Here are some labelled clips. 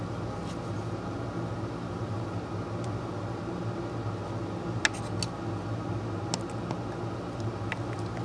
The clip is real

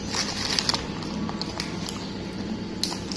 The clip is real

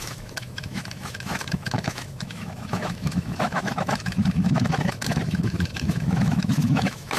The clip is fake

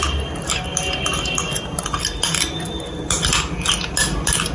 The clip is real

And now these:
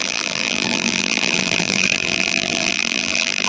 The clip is fake